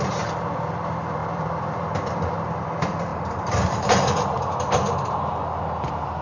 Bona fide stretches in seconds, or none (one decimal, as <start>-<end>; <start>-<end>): none